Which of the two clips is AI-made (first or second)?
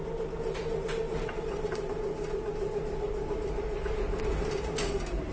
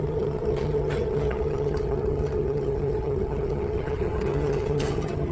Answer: second